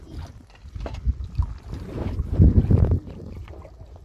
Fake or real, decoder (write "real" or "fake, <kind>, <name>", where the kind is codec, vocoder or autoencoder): real